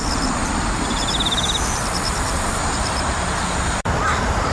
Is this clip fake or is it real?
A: real